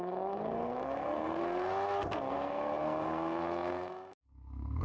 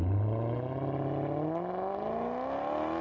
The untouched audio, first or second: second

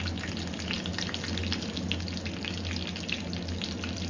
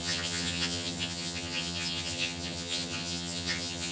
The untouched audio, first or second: first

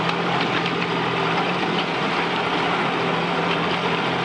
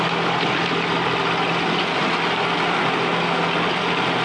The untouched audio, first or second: second